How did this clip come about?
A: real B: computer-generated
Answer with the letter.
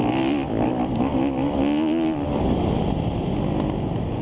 A